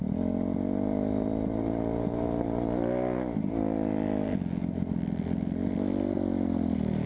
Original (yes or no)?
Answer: yes